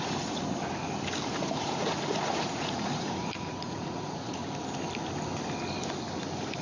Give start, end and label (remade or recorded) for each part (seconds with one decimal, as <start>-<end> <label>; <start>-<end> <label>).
0.0-0.4 remade; 0.4-1.3 recorded; 1.3-4.4 remade; 4.4-6.6 recorded